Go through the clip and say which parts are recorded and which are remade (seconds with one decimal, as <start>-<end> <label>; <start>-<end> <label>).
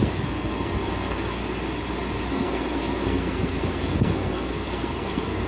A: 0.0-1.4 remade; 1.4-2.3 recorded; 2.3-5.5 remade